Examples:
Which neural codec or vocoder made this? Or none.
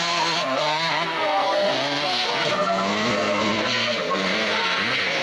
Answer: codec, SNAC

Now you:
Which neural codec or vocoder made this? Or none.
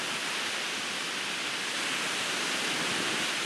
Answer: none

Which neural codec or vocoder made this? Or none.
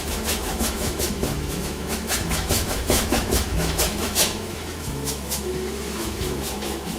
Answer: autoencoder, DAC-VAE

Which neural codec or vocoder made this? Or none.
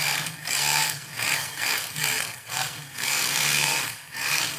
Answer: codec, SNAC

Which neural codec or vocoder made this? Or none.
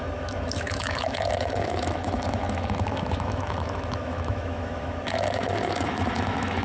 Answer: autoencoder, DAC-VAE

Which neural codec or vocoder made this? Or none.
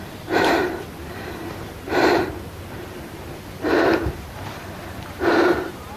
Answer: vocoder, BigVGAN v2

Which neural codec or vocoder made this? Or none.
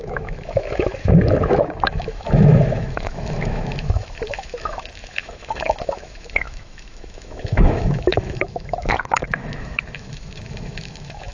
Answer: autoencoder, DAC-VAE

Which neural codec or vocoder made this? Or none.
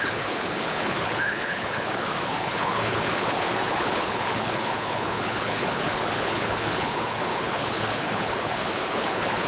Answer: codec, HILCodec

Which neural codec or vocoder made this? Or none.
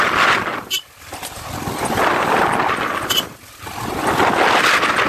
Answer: none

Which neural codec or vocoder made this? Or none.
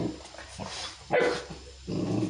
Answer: none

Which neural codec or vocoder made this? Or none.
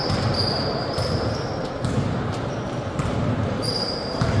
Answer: vocoder, BigVGAN v2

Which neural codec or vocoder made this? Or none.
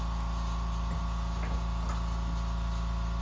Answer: none